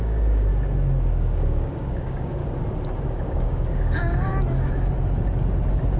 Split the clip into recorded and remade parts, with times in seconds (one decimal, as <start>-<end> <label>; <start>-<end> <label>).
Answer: 0.0-0.5 remade; 0.5-1.1 recorded; 1.1-2.4 remade; 2.4-3.0 recorded; 3.0-4.3 remade; 4.3-6.0 recorded